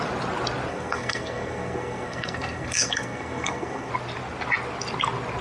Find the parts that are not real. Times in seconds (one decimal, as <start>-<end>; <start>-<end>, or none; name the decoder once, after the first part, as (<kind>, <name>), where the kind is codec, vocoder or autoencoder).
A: 0.7-3.9 (codec, SNAC)